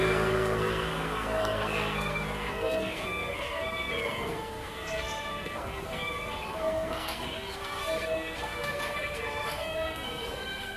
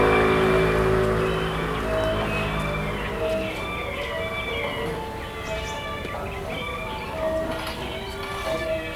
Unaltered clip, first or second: second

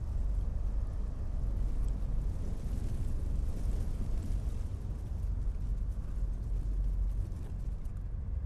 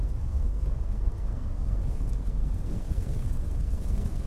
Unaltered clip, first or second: first